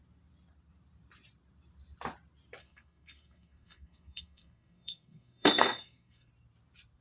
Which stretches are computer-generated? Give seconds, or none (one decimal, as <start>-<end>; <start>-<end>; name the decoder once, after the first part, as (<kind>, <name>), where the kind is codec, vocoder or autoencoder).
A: 2.6-6.3 (codec, SNAC)